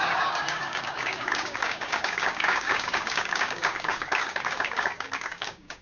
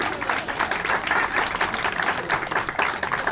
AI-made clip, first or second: first